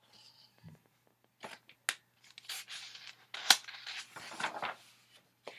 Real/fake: real